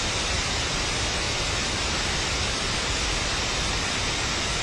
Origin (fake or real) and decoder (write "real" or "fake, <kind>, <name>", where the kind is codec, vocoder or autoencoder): real